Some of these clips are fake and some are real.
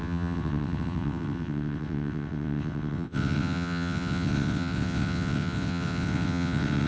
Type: fake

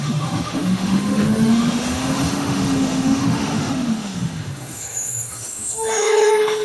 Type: fake